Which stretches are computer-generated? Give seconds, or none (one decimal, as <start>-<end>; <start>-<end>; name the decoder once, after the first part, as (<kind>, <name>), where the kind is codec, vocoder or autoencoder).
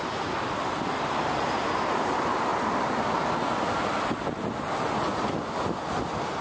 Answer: none